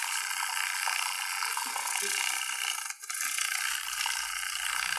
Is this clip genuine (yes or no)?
yes